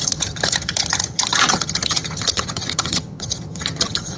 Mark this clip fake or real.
fake